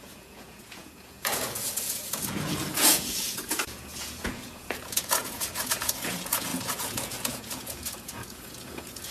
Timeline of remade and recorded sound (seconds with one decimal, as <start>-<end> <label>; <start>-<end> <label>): 0.0-9.1 remade